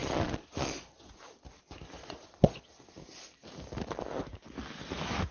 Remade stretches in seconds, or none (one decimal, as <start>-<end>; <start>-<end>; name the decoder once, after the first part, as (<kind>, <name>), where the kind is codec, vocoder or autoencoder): 0.0-1.1 (vocoder, Vocos); 2.0-2.7